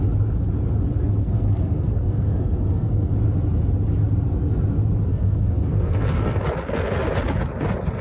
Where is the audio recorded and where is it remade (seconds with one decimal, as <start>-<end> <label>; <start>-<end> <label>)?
0.0-1.2 recorded; 1.2-3.2 remade; 3.2-5.1 recorded; 5.1-6.4 remade; 6.4-8.0 recorded